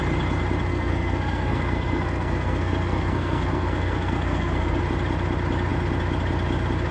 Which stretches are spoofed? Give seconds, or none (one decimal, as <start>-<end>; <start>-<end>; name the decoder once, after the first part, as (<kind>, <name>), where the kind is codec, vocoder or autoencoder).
0.7-4.8 (codec, SNAC)